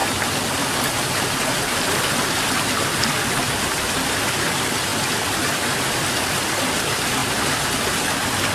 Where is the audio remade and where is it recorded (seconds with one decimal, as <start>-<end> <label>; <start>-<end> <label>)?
0.0-8.5 recorded

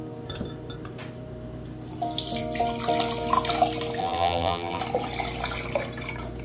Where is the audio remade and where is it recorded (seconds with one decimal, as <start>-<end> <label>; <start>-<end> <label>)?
0.0-4.0 recorded; 4.0-4.8 remade; 4.8-6.4 recorded

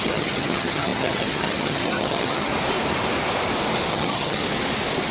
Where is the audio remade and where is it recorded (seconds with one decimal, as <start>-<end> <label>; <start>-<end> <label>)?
0.0-2.5 remade; 2.5-3.9 recorded; 3.9-4.4 remade; 4.4-5.1 recorded

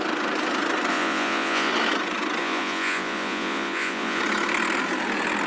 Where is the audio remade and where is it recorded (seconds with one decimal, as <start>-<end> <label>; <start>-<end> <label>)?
0.0-0.9 recorded; 0.9-1.7 remade; 1.7-2.4 recorded; 2.4-4.2 remade; 4.2-5.5 recorded

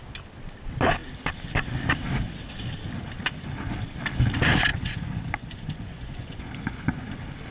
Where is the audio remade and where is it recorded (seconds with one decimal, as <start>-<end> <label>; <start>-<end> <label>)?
0.0-4.7 recorded; 4.7-7.1 remade; 7.1-7.5 recorded